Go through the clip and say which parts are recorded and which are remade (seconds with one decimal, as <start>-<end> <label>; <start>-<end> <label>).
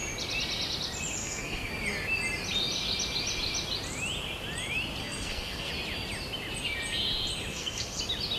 0.0-1.2 recorded; 1.2-1.7 remade; 1.7-5.0 recorded; 5.0-5.7 remade; 5.7-7.5 recorded; 7.5-8.0 remade; 8.0-8.4 recorded